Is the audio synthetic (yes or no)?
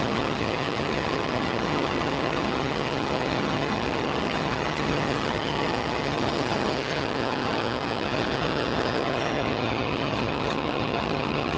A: yes